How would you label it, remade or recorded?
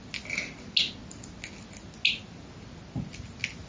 recorded